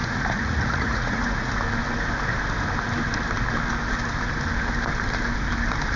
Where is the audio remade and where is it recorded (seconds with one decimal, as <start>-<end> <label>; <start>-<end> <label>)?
0.0-1.5 remade; 1.5-6.0 recorded